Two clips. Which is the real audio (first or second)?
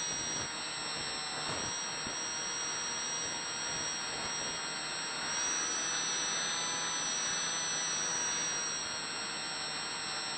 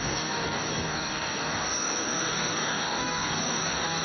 first